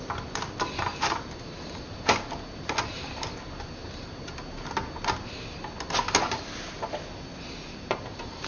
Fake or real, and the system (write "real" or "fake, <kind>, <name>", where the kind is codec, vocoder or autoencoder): real